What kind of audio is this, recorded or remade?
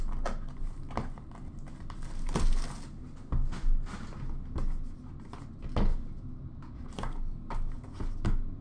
recorded